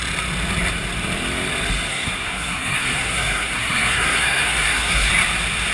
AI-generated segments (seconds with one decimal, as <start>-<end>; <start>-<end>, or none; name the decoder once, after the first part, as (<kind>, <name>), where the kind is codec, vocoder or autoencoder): 1.9-5.1 (codec, SNAC)